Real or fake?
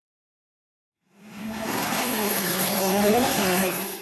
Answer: fake